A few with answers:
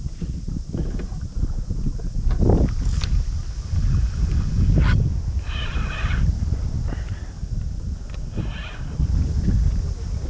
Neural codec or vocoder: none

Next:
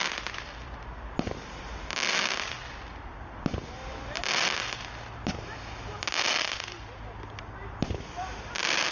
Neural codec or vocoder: none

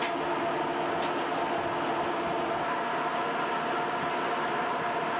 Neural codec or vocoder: none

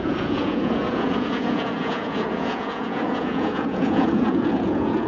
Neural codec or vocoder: vocoder, Vocos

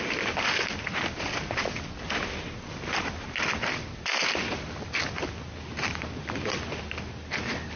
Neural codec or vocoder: none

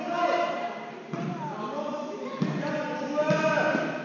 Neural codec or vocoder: none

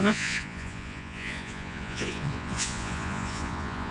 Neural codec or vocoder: vocoder, Vocos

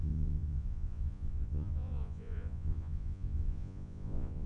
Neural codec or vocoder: vocoder, Vocos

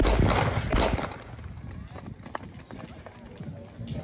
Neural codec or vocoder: none